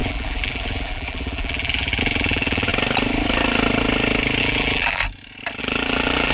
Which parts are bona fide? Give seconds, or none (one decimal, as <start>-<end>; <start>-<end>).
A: 2.7-4.4; 5.0-5.6